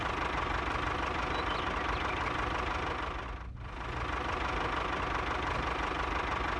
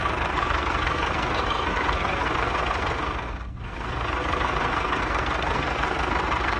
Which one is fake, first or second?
second